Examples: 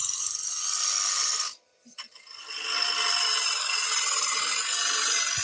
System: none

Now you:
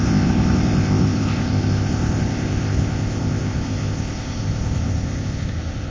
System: codec, ZipCodec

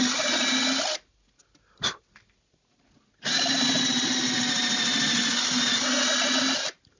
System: none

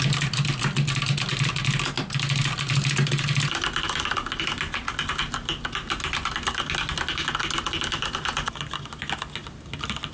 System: none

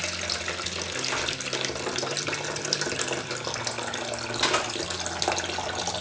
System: none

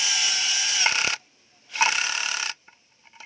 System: none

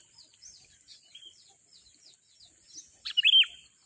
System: none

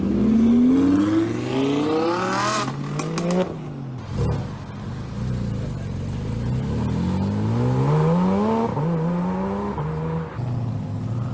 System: none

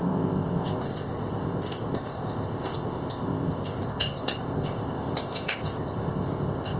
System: codec, ZipCodec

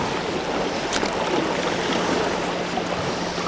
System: none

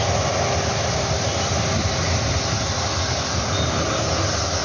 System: none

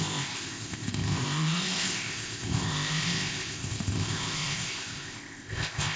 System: codec, ZipCodec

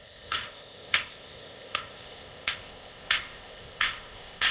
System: codec, ZipCodec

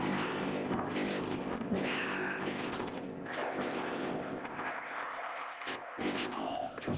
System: codec, ZipCodec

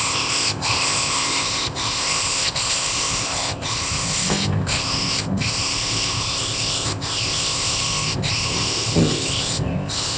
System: codec, ZipCodec